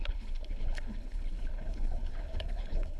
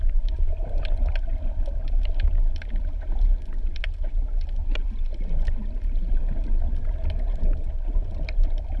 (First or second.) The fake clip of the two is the first